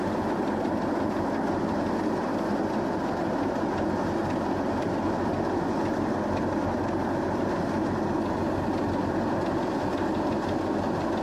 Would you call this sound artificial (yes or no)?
no